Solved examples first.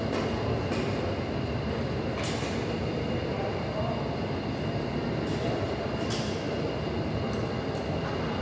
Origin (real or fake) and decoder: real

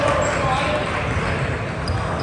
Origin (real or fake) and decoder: real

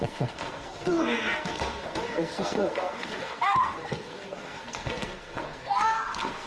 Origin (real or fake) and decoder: fake, codec, SNAC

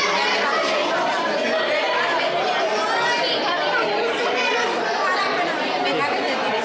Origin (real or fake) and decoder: real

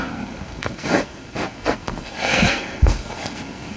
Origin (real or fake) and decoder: fake, codec, SNAC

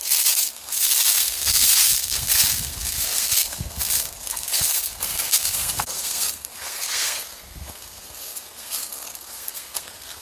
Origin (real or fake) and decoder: fake, codec, SNAC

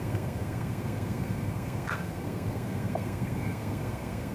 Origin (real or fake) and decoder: fake, codec, SNAC